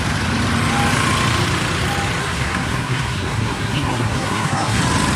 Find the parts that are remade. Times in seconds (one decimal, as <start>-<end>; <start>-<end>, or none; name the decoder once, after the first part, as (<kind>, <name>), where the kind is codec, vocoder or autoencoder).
2.2-4.8 (codec, SNAC)